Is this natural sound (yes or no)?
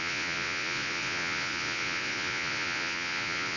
no